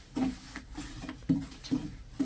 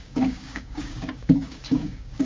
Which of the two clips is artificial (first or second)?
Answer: second